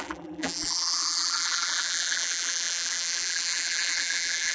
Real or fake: fake